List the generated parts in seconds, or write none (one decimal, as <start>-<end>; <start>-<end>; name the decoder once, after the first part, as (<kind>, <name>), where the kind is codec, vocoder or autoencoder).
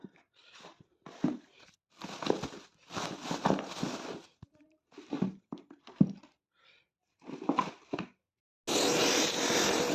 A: none